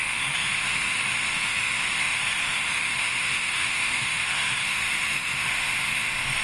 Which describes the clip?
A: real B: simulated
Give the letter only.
B